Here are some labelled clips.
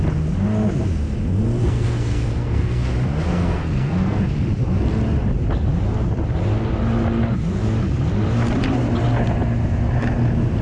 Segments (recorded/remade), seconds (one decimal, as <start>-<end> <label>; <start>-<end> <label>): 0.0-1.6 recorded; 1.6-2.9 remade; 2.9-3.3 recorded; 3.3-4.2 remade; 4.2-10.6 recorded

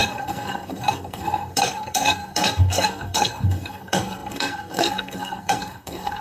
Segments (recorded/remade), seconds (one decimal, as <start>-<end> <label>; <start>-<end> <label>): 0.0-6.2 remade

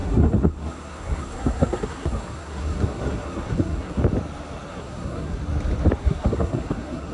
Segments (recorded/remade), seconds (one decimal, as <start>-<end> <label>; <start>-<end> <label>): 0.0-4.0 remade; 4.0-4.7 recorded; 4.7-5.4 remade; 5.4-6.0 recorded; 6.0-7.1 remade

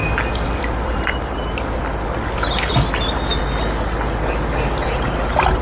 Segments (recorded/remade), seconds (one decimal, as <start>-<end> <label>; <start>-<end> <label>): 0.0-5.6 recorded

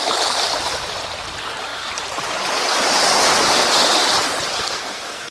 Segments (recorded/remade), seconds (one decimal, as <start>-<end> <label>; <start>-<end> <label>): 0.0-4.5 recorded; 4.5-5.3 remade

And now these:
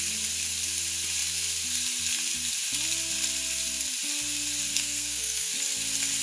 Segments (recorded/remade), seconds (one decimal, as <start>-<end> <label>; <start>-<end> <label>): 0.0-4.7 recorded; 4.7-5.5 remade; 5.5-6.2 recorded

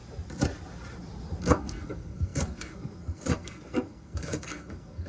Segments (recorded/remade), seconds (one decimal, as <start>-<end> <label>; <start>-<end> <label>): 0.0-1.4 recorded; 1.4-5.1 remade